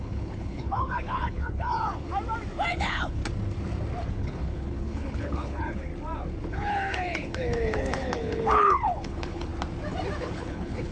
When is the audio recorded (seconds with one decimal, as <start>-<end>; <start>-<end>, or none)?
2.1-2.7; 3.2-4.1; 5.9-6.5; 9.5-10.2